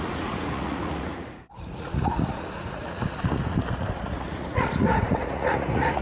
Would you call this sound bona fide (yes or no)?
no